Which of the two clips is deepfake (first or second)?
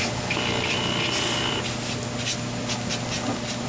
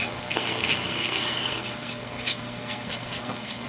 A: second